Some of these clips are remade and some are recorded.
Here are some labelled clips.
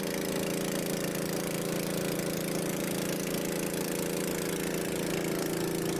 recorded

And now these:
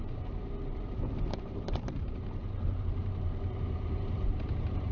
remade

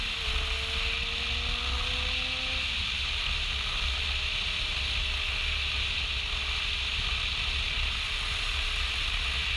recorded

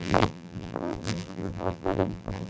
remade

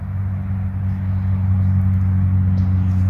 recorded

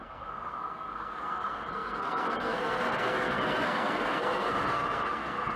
remade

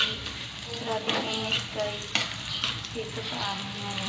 remade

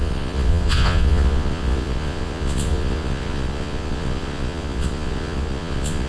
remade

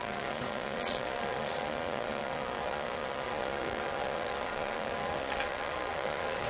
remade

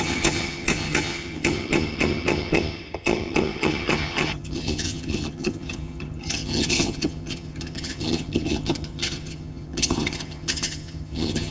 remade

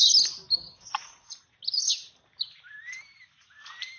recorded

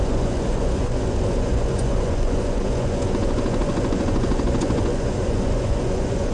remade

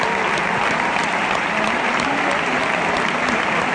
recorded